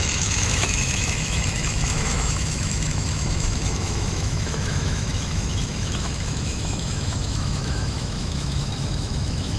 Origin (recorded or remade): remade